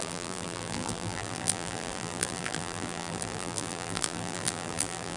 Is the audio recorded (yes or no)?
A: no